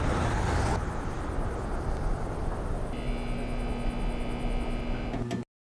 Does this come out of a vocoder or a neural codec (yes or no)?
no